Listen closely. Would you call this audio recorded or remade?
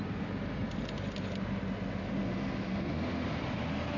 recorded